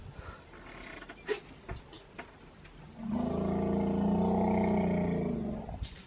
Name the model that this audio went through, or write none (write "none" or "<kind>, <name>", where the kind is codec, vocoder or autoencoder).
none